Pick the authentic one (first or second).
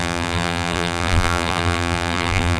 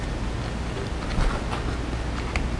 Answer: second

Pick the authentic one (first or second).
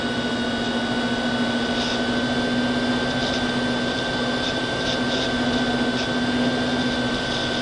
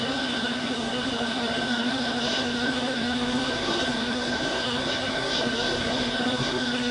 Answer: first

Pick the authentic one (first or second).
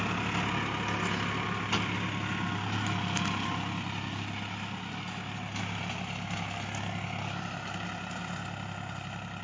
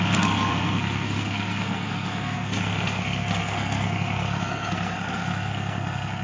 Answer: first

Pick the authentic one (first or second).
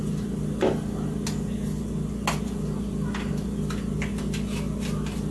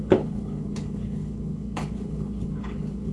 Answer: first